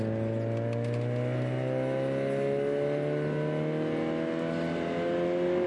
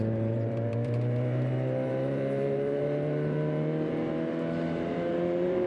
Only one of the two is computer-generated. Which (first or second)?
second